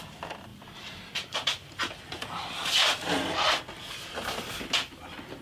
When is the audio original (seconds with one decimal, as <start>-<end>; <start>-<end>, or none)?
0.0-0.5; 3.6-5.4